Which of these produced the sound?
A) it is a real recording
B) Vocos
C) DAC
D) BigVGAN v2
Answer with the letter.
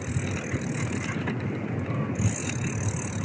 A